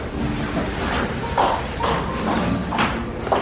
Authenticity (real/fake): real